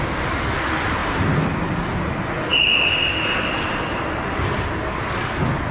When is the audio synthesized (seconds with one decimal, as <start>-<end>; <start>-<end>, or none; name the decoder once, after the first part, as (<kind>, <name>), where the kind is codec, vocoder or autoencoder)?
none